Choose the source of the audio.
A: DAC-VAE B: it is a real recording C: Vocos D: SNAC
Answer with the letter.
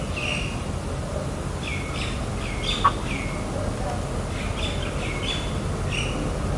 B